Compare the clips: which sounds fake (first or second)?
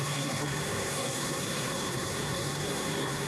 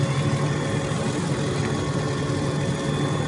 first